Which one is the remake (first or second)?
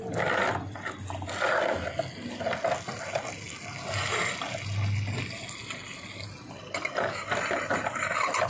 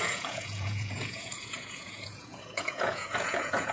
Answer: second